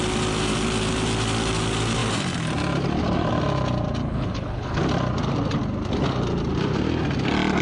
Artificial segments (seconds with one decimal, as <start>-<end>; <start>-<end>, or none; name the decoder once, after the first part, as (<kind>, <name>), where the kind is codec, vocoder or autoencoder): 4.0-4.8 (codec, HILCodec)